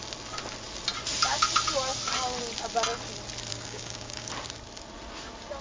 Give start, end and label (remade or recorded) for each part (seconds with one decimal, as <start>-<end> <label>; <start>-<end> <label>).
0.0-3.5 recorded; 3.5-4.3 remade; 4.3-5.6 recorded